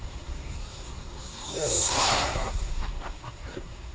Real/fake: fake